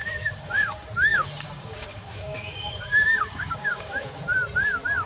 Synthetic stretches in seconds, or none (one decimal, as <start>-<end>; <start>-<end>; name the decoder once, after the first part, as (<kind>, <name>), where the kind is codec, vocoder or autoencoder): 0.0-0.7 (codec, DAC); 1.1-4.2